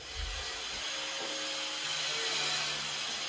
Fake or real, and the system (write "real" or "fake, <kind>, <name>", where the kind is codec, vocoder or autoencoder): real